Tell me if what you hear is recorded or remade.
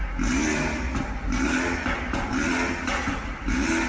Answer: recorded